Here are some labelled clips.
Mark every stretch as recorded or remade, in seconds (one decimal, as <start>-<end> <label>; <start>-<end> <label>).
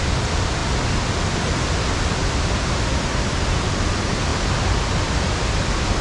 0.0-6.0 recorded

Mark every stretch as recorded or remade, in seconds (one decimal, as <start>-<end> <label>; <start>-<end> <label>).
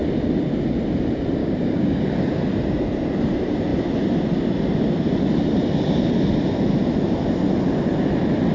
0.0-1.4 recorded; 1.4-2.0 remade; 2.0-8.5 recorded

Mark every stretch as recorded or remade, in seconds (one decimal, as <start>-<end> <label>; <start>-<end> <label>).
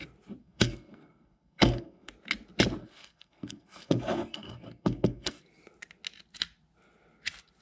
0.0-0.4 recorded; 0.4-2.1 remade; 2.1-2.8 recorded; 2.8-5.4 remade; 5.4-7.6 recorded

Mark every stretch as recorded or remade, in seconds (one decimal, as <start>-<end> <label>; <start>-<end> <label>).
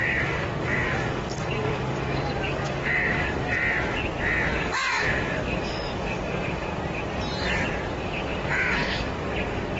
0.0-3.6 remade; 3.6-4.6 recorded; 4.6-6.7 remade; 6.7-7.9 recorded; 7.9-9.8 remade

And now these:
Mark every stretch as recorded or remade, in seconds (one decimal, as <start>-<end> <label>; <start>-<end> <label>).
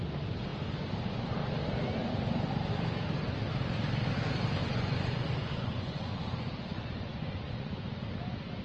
0.0-4.6 recorded; 4.6-8.0 remade; 8.0-8.6 recorded